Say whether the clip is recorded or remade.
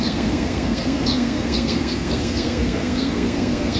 remade